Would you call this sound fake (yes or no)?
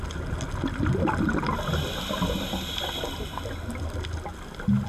no